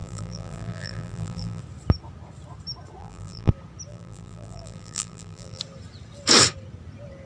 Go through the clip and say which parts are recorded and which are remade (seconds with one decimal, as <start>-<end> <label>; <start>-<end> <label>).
0.0-1.6 remade; 1.6-3.0 recorded; 3.0-3.5 remade; 3.5-3.9 recorded; 3.9-5.6 remade; 5.6-7.3 recorded